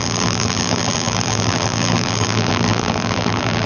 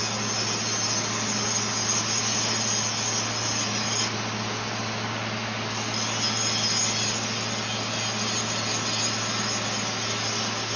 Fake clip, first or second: first